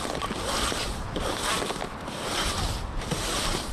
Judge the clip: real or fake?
real